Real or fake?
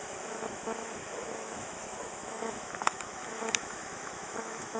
fake